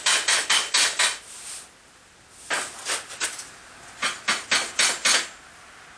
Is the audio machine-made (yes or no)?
no